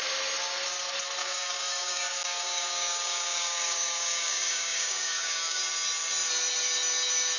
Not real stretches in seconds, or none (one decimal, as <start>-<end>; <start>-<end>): 1.2-5.6